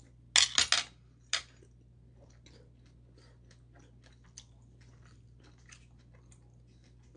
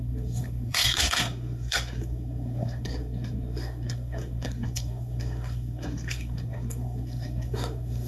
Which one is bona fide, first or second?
first